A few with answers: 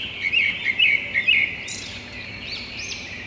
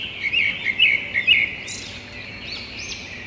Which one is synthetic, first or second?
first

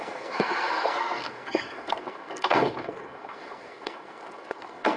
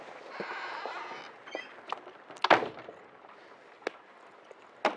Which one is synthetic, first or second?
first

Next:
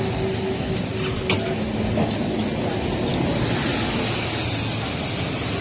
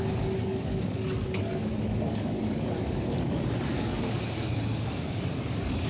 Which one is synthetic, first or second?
second